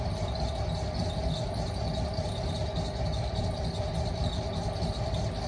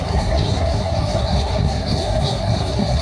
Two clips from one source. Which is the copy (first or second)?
second